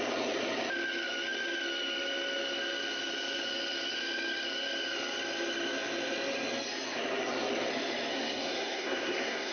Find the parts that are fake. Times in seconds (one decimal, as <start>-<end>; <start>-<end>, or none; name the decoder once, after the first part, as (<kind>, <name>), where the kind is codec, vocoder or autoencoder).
8.1-9.5 (codec, SNAC)